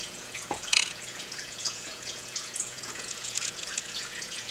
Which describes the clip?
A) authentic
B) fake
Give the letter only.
B